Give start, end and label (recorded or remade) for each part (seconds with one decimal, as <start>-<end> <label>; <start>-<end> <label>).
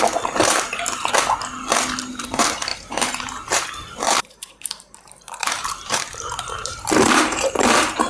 0.0-0.7 remade; 0.7-2.1 recorded; 2.1-8.1 remade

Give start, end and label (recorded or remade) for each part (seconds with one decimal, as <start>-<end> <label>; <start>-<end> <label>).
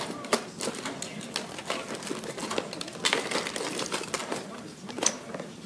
0.0-2.4 recorded; 2.4-3.0 remade; 3.0-4.2 recorded; 4.2-5.7 remade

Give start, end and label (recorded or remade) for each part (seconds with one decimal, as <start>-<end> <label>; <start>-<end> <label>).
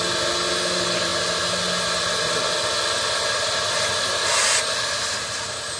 0.0-5.8 recorded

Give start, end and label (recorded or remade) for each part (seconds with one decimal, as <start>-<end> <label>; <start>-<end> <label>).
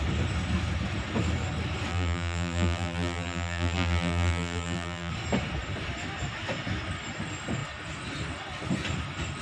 0.0-1.9 recorded; 1.9-5.1 remade; 5.1-9.4 recorded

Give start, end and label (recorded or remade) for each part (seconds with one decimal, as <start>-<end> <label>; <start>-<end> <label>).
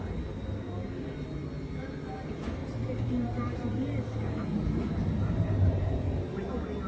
0.0-2.6 recorded; 2.6-6.3 remade; 6.3-6.9 recorded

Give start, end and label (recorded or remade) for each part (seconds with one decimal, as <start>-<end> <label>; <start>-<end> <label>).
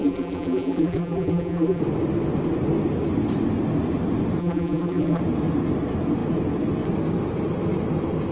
0.0-1.8 remade; 1.8-4.4 recorded; 4.4-5.2 remade; 5.2-8.3 recorded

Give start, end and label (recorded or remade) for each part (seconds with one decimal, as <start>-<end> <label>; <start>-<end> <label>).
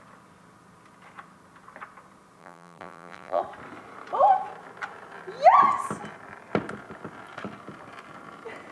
0.0-2.4 recorded; 2.4-3.4 remade; 3.4-8.7 recorded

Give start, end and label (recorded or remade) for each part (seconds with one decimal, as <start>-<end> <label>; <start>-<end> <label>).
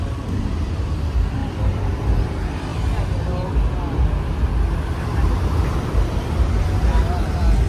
0.0-2.7 remade; 2.7-3.4 recorded; 3.4-4.5 remade; 4.5-5.0 recorded; 5.0-7.7 remade